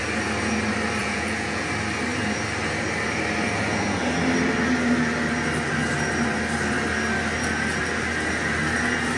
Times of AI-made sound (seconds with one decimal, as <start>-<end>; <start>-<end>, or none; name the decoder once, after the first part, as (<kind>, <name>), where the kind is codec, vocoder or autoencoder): 1.0-1.7 (vocoder, Vocos)